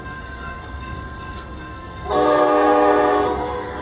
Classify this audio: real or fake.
fake